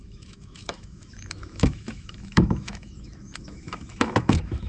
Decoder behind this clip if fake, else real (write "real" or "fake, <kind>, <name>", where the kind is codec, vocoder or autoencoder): fake, autoencoder, DAC-VAE